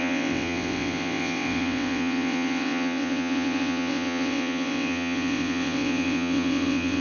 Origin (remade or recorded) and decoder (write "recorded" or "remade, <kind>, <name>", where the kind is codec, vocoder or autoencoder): remade, vocoder, WaveNeXt